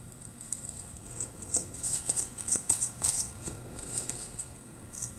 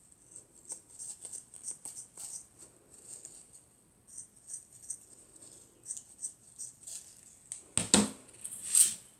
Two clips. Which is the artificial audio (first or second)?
first